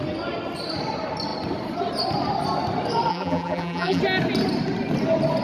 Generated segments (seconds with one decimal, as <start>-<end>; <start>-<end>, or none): 3.1-4.0

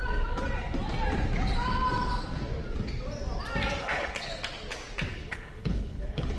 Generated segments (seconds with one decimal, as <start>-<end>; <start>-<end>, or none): 3.8-4.3; 5.1-6.4